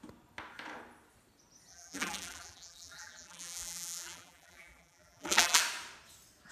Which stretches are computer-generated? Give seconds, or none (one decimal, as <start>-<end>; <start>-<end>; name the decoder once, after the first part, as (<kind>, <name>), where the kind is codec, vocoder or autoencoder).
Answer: 1.7-5.6 (vocoder, BigVGAN v2)